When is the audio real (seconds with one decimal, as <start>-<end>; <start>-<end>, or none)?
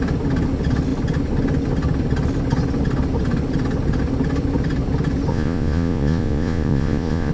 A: 0.0-5.3